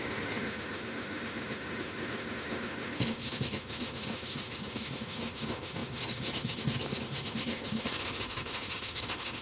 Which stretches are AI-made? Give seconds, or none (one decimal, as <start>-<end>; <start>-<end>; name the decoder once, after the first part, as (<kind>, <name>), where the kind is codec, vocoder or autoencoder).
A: 0.0-9.4 (autoencoder, DAC-VAE)